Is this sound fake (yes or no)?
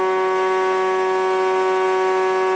no